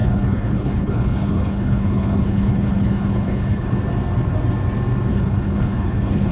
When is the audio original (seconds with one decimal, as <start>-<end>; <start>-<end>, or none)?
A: 3.8-5.1